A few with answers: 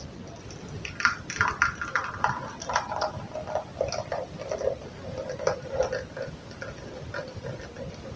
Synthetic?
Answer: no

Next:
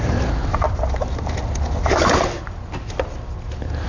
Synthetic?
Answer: no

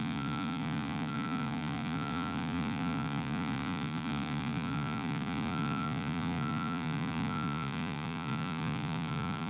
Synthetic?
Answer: yes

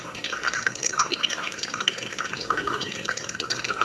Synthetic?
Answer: yes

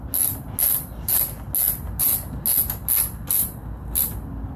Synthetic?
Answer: no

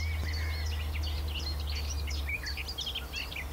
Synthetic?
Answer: no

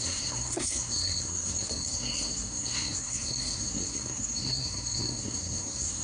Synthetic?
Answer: yes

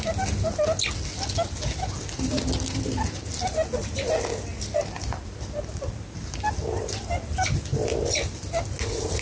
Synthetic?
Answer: no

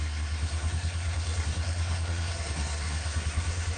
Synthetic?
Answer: yes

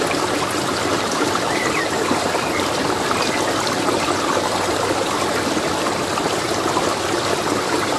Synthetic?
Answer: no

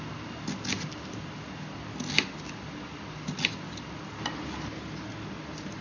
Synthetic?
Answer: no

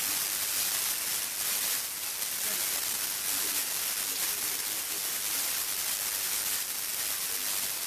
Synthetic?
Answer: no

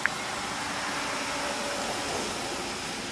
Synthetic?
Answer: no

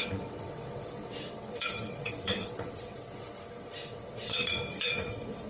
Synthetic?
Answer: yes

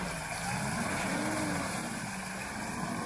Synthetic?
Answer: no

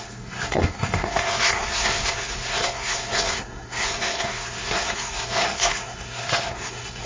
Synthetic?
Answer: yes